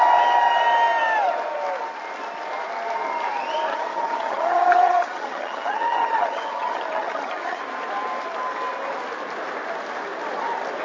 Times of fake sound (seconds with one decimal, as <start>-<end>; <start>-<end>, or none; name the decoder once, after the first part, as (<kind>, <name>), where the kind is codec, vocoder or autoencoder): 3.7-7.6 (vocoder, HiFi-GAN)